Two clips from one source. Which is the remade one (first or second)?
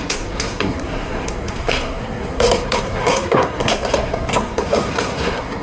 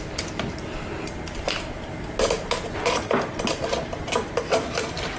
first